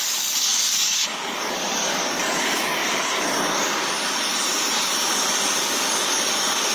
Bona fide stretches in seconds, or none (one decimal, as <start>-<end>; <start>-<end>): 4.3-5.1

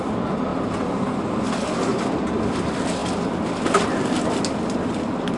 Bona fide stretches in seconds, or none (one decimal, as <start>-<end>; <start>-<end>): 0.0-5.4

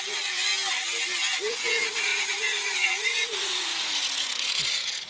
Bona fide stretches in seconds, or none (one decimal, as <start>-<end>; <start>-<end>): 0.5-1.5

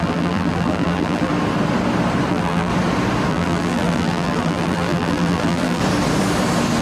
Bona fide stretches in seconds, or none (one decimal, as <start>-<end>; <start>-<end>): 1.3-2.3; 2.7-3.3; 5.8-6.8

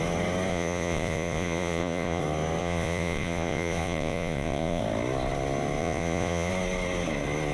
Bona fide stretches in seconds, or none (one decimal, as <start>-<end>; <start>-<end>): 0.0-0.5; 2.2-2.6; 4.8-5.8; 6.5-7.5

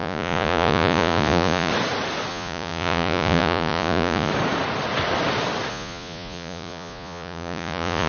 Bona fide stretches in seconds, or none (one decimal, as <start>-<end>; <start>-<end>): 1.7-2.3; 4.3-5.7